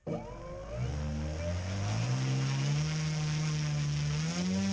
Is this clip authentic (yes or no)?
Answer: yes